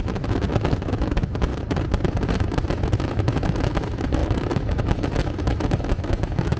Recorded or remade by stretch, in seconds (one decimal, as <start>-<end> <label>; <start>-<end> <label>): 0.0-1.5 remade; 1.5-2.7 recorded; 2.7-6.6 remade